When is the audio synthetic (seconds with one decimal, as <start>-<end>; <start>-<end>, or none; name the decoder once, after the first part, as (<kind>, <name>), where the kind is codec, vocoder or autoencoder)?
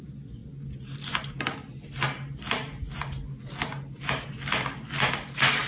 none